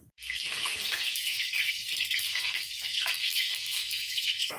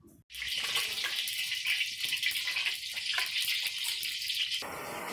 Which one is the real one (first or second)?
second